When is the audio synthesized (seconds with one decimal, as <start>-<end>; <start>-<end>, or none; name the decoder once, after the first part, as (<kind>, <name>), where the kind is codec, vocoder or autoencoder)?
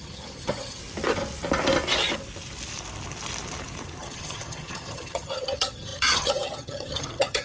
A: 0.0-0.8 (vocoder, HiFi-GAN); 4.0-7.4